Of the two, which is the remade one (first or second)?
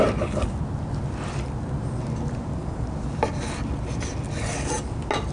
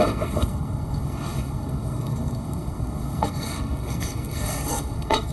second